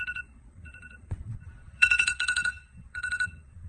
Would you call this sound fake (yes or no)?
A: yes